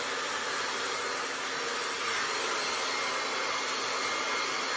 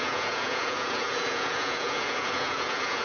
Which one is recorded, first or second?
first